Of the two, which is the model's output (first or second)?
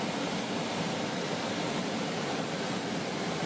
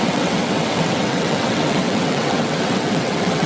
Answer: second